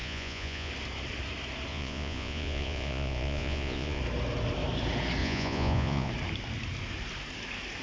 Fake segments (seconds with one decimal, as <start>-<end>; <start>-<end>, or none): 0.0-0.7; 1.7-4.0; 5.2-6.1